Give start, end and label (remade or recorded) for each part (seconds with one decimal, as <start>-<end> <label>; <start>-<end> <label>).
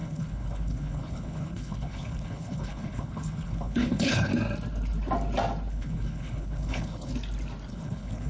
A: 0.0-4.3 remade; 4.3-5.7 recorded; 5.7-7.1 remade; 7.1-7.7 recorded; 7.7-8.3 remade